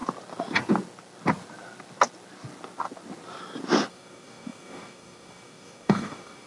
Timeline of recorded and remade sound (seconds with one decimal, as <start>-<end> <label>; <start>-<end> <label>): 0.0-3.9 recorded; 3.9-6.5 remade